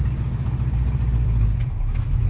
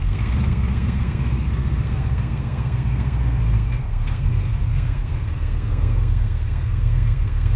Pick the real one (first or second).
first